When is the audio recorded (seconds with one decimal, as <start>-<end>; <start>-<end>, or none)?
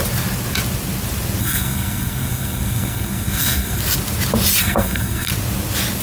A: 0.0-1.4; 3.8-4.6; 5.3-6.0